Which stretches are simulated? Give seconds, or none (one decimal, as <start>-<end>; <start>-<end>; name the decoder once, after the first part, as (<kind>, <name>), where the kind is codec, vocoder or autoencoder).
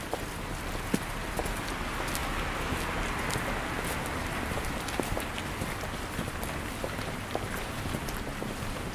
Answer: none